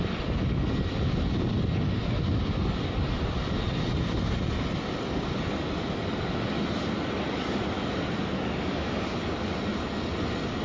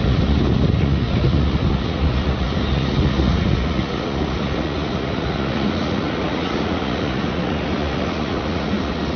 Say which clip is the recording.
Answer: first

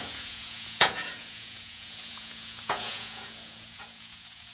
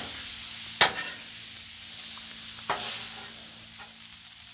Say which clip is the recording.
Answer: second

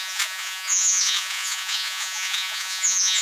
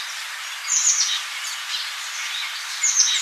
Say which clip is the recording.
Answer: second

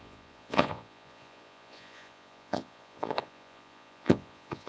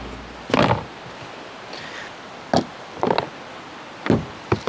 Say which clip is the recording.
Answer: second